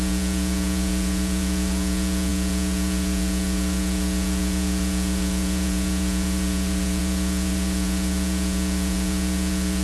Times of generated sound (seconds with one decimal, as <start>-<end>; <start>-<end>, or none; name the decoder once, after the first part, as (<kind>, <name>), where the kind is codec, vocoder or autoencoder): 0.0-9.8 (vocoder, Vocos)